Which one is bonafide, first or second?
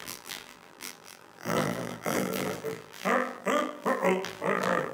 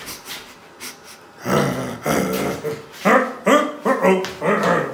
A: second